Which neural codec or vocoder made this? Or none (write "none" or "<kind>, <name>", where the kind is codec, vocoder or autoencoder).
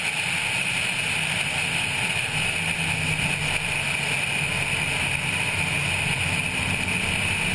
none